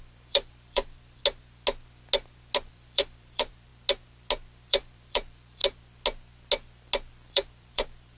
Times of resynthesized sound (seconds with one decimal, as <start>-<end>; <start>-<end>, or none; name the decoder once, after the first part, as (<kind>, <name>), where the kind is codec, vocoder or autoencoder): 0.0-1.2 (vocoder, BigVGAN v2); 2.7-3.7; 4.7-5.6; 7.1-8.2